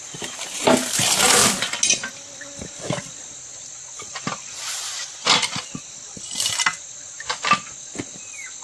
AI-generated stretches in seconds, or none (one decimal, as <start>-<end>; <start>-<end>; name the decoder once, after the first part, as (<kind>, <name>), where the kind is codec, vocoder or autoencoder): none